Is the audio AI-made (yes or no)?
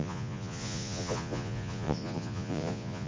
yes